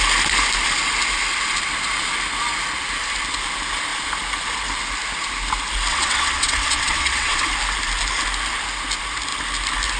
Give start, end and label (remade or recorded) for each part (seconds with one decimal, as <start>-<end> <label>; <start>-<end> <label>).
0.0-5.9 recorded; 5.9-7.5 remade; 7.5-10.0 recorded